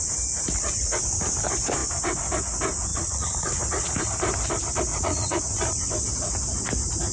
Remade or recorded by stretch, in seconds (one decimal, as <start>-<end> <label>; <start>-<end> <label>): 0.0-2.9 recorded; 2.9-4.0 remade; 4.0-4.9 recorded; 4.9-5.4 remade; 5.4-7.1 recorded